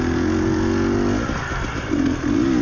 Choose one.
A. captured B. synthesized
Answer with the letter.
A